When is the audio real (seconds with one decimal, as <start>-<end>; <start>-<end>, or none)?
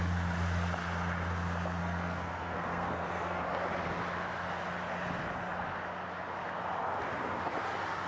0.0-1.8; 3.4-8.1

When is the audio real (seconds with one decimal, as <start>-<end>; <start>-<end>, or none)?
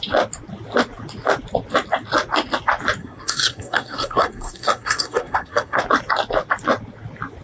0.0-3.0; 5.8-7.4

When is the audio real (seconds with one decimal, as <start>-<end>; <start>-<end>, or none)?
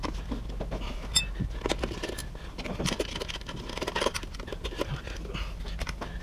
0.0-6.2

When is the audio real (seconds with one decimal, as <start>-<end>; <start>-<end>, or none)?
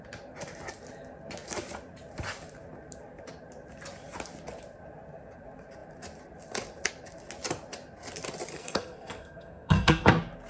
0.0-8.5; 10.1-10.5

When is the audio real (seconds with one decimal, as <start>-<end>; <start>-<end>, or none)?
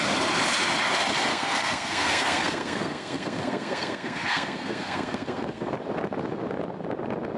0.0-1.3; 5.7-7.4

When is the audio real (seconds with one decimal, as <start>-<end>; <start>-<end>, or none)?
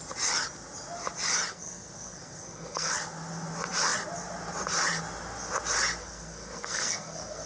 0.0-1.5; 2.9-6.0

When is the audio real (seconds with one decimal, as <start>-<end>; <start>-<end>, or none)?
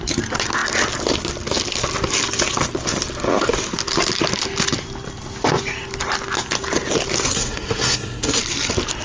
0.0-7.3; 8.4-9.0